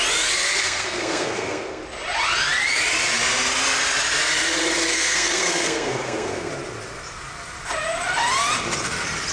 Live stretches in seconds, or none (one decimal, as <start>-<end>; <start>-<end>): 0.0-0.6; 1.8-4.9; 6.5-9.3